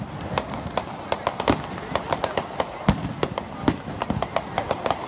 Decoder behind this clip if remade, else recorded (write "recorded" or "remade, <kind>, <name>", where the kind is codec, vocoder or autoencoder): recorded